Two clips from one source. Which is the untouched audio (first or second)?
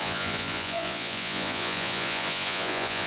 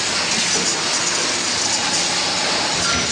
second